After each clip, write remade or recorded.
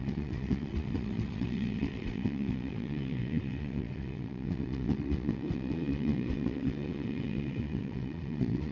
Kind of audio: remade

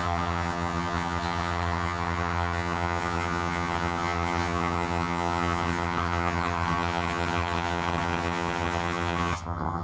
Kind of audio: remade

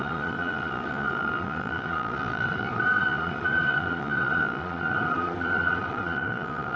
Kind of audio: remade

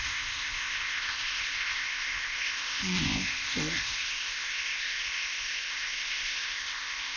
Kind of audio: remade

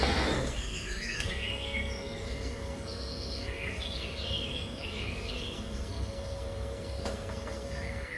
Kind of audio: remade